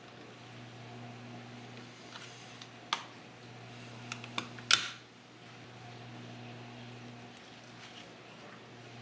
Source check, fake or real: real